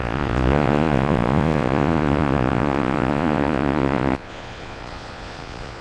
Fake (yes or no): yes